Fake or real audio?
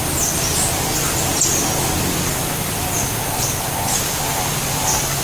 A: fake